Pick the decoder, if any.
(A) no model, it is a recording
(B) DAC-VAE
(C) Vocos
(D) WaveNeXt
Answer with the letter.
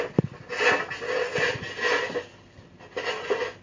A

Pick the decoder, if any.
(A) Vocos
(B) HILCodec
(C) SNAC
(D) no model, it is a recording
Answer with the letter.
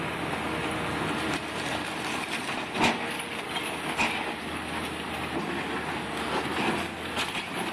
D